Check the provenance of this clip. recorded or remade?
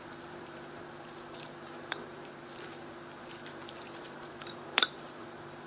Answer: remade